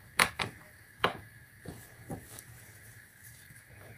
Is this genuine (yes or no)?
no